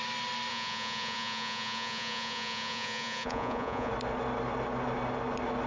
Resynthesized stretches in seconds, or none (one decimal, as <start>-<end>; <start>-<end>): 0.5-3.9